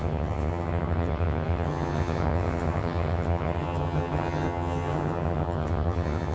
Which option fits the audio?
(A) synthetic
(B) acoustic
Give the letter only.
A